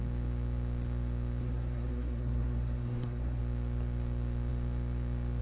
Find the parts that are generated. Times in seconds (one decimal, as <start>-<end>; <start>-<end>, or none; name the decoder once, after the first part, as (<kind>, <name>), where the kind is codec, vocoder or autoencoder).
1.4-3.4 (codec, SNAC)